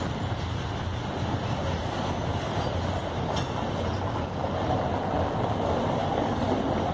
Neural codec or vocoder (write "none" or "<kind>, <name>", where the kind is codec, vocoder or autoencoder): none